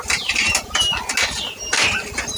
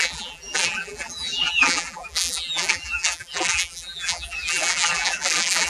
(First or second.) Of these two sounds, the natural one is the first